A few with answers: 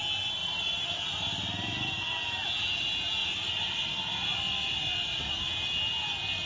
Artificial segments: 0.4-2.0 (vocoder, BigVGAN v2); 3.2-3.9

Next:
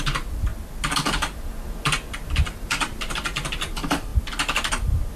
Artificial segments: 0.0-0.5 (vocoder, BigVGAN v2); 2.1-4.1; 4.7-5.2

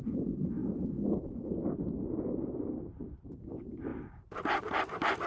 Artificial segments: 0.0-3.9 (vocoder, BigVGAN v2); 4.7-5.3

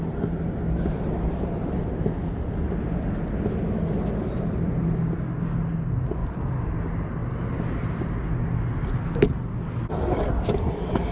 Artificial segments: 6.2-6.8 (vocoder, BigVGAN v2); 7.2-7.8